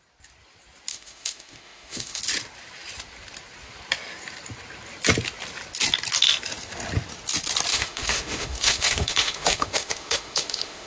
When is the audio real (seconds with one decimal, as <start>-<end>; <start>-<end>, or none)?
0.0-0.9; 2.2-7.7